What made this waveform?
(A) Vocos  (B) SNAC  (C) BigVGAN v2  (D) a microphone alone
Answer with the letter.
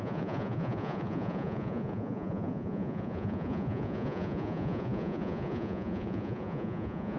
A